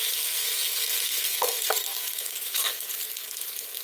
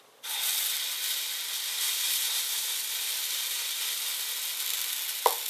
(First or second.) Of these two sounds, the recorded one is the second